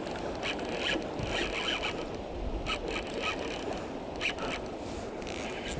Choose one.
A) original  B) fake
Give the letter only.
A